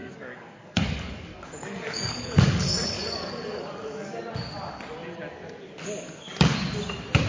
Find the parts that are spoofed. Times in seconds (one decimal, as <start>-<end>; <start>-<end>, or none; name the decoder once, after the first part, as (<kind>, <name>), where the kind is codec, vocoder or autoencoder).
0.0-4.3 (codec, DAC)